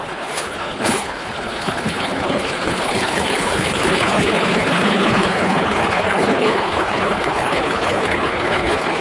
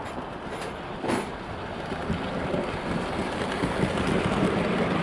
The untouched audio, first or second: second